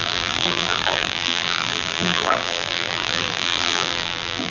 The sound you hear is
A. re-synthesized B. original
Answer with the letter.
A